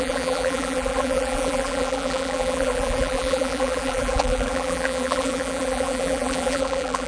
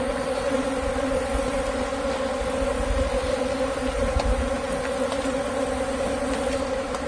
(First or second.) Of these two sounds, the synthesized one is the first